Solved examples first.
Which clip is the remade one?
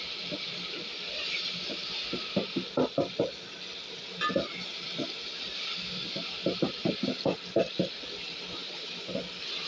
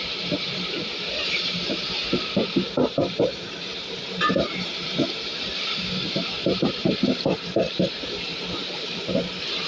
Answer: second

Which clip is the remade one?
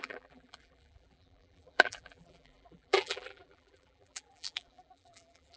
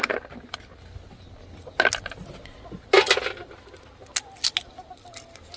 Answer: first